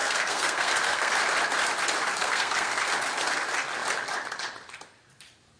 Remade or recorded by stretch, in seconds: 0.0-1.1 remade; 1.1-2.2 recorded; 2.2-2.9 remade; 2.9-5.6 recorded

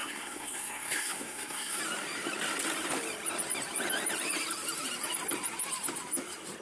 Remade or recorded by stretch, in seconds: 0.0-1.8 remade; 1.8-6.6 recorded